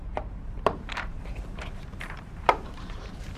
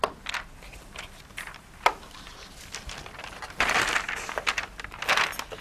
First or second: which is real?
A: second